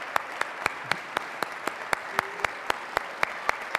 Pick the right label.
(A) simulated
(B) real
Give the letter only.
A